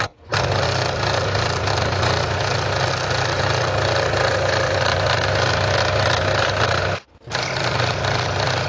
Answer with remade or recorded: recorded